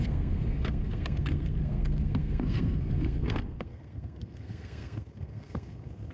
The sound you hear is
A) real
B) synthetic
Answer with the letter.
B